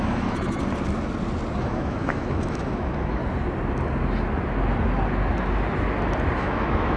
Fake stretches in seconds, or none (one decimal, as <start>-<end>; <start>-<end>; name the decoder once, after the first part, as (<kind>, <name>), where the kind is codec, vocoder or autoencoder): 0.0-0.6 (autoencoder, DAC-VAE); 1.6-3.2; 6.4-7.0